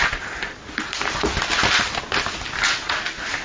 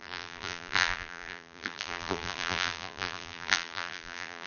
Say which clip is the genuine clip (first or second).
first